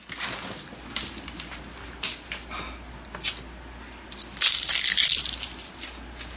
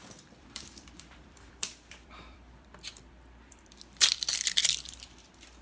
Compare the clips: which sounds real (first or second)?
first